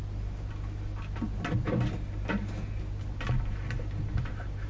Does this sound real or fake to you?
real